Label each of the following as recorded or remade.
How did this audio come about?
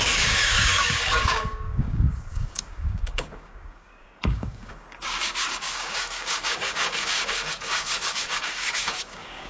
remade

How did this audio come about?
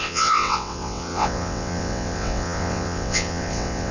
remade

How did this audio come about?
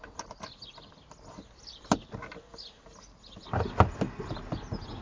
recorded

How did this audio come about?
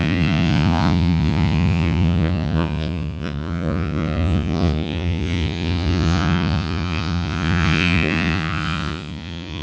remade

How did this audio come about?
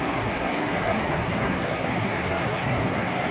remade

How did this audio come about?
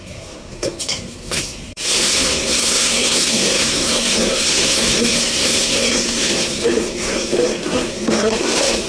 remade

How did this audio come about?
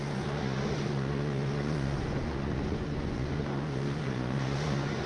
remade